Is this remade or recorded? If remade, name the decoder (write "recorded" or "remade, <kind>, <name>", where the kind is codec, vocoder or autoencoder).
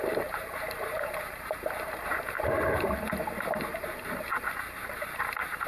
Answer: remade, vocoder, BigVGAN v2